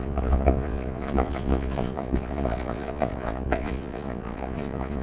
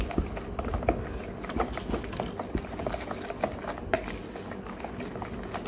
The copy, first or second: first